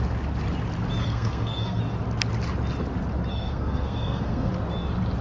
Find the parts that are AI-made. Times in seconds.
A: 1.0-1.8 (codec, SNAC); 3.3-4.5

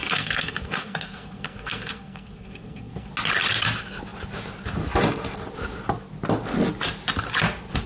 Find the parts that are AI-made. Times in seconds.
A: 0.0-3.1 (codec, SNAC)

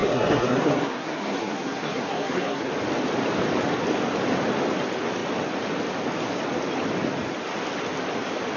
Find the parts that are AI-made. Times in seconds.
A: 0.0-2.7 (codec, SNAC)